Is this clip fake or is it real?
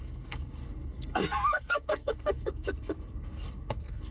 fake